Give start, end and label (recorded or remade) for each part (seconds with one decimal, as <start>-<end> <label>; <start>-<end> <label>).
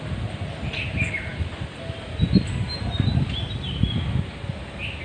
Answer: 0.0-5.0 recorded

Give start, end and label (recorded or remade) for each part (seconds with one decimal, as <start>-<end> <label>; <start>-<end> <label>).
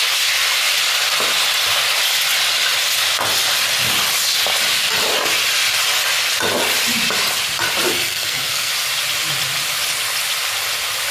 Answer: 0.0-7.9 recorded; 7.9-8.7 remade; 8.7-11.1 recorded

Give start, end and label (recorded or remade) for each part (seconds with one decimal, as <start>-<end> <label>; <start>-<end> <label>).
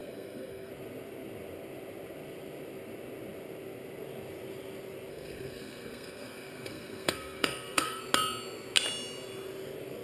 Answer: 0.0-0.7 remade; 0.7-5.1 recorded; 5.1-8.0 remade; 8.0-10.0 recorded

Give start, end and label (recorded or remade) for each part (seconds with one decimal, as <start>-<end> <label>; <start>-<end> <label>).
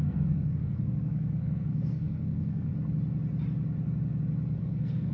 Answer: 0.0-2.7 remade; 2.7-4.6 recorded; 4.6-5.1 remade